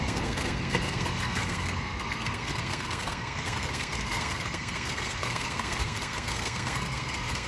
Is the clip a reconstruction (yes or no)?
yes